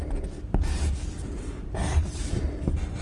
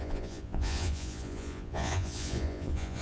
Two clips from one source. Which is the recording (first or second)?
first